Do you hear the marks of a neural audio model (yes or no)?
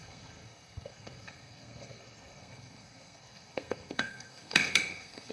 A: yes